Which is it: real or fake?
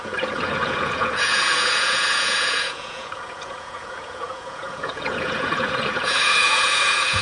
fake